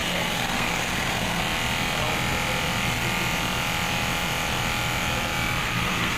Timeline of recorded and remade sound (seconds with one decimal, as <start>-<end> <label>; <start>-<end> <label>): 0.0-1.4 remade; 1.4-5.6 recorded; 5.6-6.2 remade